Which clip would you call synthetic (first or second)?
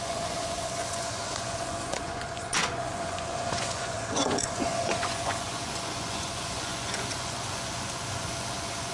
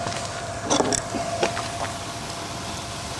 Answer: first